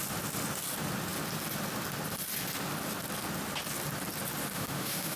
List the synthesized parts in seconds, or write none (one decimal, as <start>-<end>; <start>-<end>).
4.5-5.2